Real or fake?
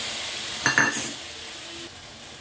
real